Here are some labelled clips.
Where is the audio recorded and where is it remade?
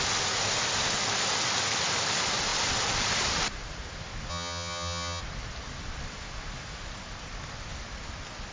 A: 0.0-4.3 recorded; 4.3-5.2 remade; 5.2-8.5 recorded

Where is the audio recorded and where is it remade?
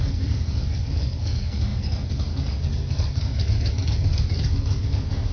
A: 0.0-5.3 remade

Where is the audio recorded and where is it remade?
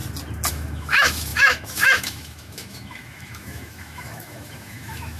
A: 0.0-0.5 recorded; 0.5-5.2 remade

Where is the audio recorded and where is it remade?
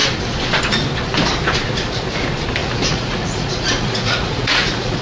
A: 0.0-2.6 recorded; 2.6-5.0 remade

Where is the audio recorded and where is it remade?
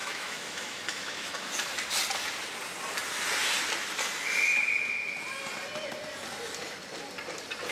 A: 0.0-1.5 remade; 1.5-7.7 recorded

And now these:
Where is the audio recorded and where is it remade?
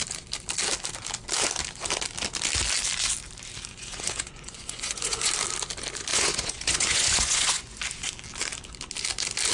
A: 0.0-3.7 recorded; 3.7-5.3 remade; 5.3-6.1 recorded; 6.1-7.8 remade; 7.8-9.5 recorded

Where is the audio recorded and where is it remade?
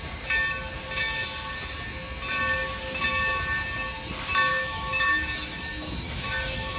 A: 0.0-4.5 recorded; 4.5-6.8 remade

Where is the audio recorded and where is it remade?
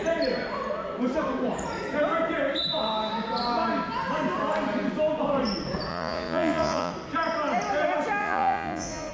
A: 0.0-5.9 recorded; 5.9-6.9 remade; 6.9-8.2 recorded; 8.2-9.1 remade